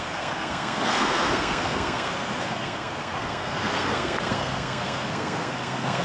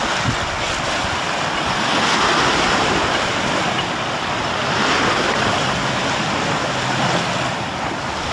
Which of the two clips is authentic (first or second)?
second